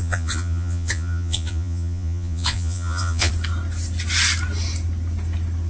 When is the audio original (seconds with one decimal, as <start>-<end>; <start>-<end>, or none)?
3.3-5.7

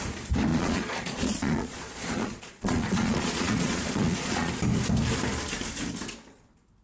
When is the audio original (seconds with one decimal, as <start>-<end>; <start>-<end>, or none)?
0.0-0.5; 4.5-6.8

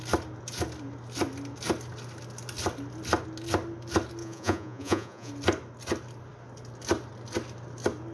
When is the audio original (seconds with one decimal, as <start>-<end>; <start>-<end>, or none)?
0.0-4.2; 5.3-8.1

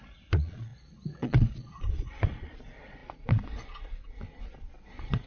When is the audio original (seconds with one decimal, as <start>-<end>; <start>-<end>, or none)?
none